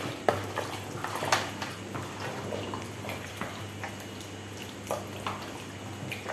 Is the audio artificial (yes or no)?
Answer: no